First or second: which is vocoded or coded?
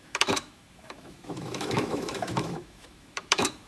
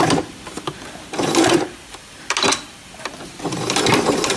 first